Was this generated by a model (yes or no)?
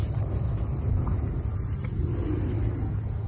no